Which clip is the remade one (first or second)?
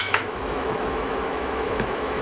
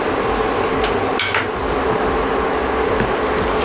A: first